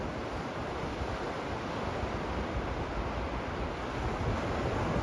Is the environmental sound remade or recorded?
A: recorded